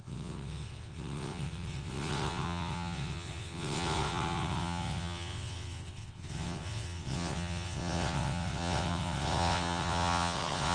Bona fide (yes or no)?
no